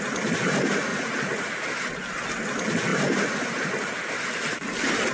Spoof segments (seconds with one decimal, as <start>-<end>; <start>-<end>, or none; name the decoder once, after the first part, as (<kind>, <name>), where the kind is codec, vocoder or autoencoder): 0.9-1.5 (vocoder, Vocos)